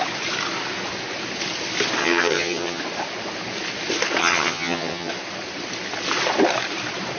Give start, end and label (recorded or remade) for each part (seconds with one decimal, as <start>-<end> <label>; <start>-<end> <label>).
0.0-2.0 recorded; 2.0-2.8 remade; 2.8-4.2 recorded; 4.2-5.1 remade; 5.1-7.2 recorded